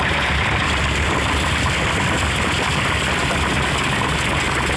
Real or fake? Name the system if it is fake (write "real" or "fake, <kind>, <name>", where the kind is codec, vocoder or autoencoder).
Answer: real